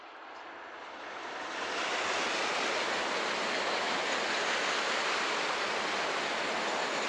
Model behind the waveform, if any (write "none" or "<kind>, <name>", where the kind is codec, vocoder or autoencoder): none